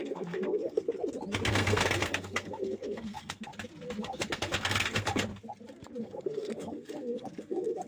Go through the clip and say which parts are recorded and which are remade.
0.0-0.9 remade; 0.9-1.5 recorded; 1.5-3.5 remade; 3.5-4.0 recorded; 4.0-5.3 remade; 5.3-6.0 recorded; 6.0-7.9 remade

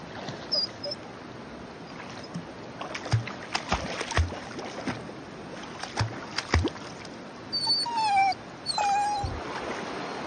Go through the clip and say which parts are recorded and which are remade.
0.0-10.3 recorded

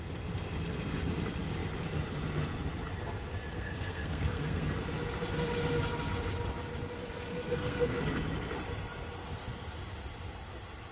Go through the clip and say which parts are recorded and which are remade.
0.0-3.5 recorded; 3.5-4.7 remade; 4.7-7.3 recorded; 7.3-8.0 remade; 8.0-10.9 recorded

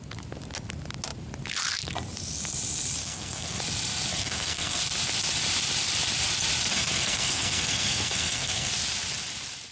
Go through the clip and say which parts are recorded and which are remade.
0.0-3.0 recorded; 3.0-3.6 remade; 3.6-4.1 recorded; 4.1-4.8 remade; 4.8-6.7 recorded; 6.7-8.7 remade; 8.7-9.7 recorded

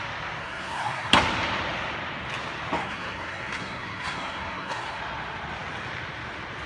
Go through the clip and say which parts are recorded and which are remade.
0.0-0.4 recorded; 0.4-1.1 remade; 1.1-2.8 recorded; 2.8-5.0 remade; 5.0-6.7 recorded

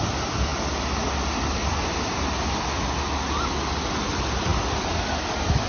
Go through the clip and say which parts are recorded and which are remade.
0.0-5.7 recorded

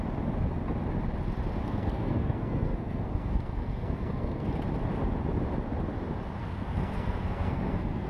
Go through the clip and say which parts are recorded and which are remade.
0.0-1.6 recorded; 1.6-4.5 remade; 4.5-6.4 recorded; 6.4-8.1 remade

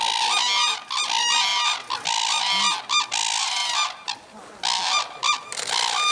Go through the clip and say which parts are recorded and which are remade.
0.0-6.1 recorded